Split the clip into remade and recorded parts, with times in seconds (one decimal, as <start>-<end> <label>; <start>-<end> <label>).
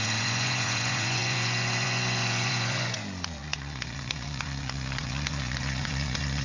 0.0-6.4 remade